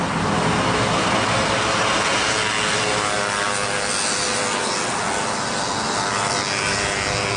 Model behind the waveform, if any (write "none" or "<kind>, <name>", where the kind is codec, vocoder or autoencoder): none